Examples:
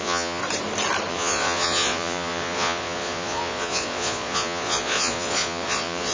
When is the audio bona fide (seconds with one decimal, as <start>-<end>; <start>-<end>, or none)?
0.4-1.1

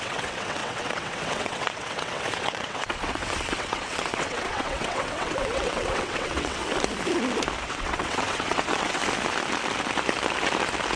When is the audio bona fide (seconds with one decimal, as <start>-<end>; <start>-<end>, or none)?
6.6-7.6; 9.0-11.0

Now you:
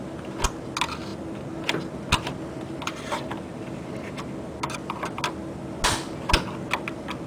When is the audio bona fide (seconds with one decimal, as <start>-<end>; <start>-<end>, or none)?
0.0-7.3

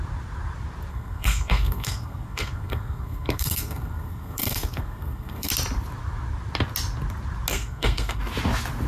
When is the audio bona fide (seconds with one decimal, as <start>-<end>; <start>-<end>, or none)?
0.0-0.9; 5.5-7.5; 8.2-8.9

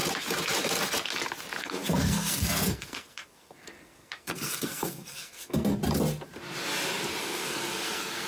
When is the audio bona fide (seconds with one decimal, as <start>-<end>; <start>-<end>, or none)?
0.0-1.6; 5.8-7.2